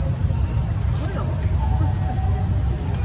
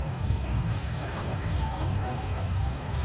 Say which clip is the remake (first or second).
second